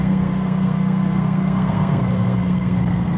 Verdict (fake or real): fake